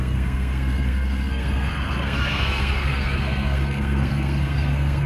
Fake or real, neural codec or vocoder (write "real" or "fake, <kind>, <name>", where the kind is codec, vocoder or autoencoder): fake, codec, SNAC